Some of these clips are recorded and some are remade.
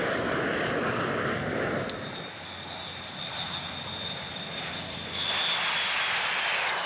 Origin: recorded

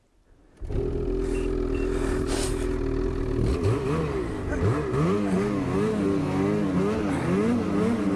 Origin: recorded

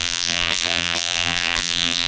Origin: remade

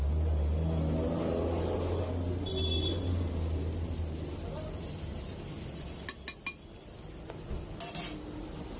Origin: recorded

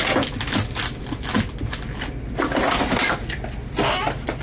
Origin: recorded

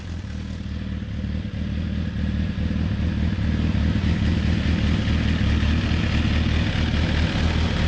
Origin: recorded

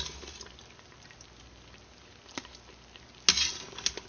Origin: recorded